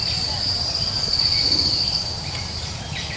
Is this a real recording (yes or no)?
no